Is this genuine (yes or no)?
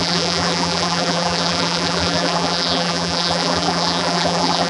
no